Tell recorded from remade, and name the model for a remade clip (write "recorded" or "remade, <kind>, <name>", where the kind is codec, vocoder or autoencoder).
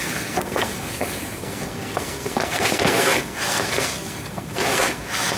remade, codec, SNAC